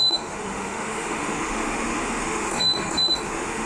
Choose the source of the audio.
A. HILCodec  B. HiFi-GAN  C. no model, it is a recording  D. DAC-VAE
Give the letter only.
D